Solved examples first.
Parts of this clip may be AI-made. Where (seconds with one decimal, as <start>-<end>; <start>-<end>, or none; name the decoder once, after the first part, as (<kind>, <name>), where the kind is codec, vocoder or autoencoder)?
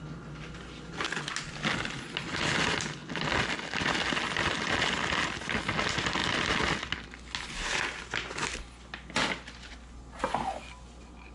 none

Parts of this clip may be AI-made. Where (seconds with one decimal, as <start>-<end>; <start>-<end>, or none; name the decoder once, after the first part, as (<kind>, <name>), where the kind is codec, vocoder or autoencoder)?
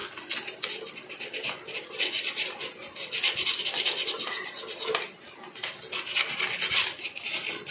none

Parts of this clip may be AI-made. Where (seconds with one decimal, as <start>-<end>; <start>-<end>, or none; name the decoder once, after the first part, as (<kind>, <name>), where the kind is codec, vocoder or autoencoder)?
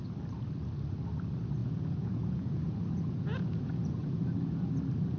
1.6-4.7 (vocoder, Vocos)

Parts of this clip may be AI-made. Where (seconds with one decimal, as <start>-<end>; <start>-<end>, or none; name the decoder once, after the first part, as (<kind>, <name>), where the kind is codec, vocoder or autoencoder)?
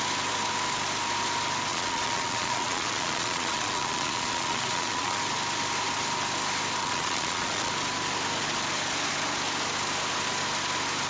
1.7-5.2 (vocoder, Vocos); 6.8-7.7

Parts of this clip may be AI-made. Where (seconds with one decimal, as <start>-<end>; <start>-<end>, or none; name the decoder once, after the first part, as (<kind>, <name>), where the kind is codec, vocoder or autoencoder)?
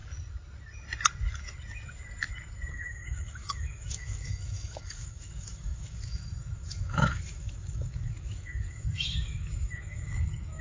2.7-10.6 (autoencoder, DAC-VAE)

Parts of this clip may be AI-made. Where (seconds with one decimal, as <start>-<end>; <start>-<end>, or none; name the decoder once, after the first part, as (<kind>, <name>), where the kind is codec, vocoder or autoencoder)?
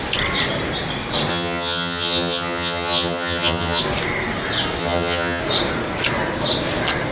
1.3-3.8 (vocoder, HiFi-GAN); 4.8-5.4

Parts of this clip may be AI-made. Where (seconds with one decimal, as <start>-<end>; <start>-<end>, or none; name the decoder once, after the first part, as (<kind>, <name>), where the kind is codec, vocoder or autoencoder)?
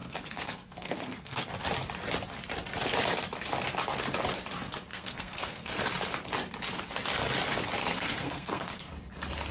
0.0-1.5 (codec, SNAC); 4.9-5.7; 7.8-8.9